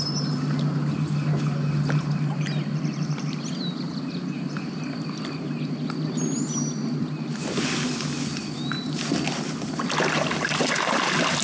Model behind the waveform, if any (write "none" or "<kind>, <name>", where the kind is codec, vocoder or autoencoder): none